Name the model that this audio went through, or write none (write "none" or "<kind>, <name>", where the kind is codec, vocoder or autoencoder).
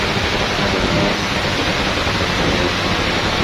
none